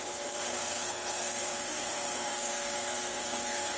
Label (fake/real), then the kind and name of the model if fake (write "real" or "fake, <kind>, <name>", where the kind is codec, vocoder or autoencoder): fake, codec, SNAC